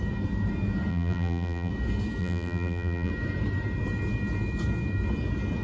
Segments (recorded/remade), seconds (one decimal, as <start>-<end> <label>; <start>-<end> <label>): 0.0-0.9 recorded; 0.9-1.7 remade; 1.7-2.2 recorded; 2.2-3.1 remade; 3.1-5.6 recorded